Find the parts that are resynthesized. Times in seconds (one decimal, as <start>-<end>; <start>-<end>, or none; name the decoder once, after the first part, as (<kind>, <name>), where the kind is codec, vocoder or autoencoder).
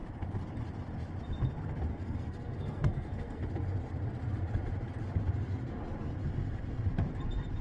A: 1.9-3.4 (codec, SNAC)